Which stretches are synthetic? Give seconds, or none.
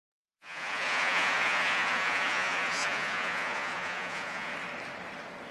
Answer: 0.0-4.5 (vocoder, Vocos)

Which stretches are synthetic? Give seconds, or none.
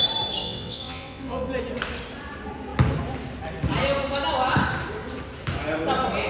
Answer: 0.4-1.5 (vocoder, WaveNeXt)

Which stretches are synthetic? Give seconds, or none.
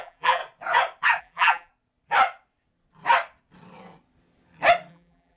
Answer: 0.0-0.4 (vocoder, BigVGAN v2); 1.2-1.7; 4.9-5.4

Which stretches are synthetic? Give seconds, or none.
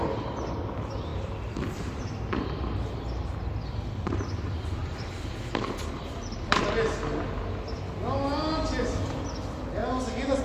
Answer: 1.1-2.0 (vocoder, BigVGAN v2); 4.8-6.6